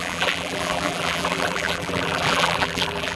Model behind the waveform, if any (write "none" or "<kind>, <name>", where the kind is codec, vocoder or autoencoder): vocoder, BigVGAN v2